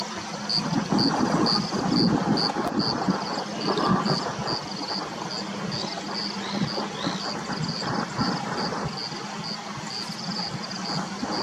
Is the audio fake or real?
real